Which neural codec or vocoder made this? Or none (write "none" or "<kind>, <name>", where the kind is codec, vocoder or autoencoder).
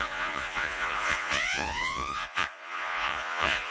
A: vocoder, Vocos